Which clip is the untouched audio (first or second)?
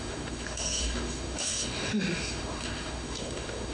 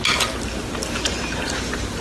second